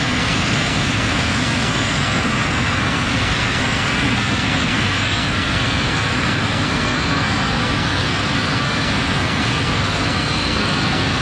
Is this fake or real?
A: fake